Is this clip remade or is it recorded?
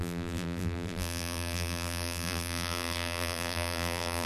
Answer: remade